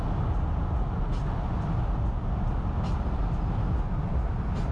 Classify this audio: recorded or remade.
recorded